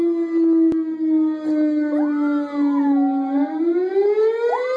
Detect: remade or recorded recorded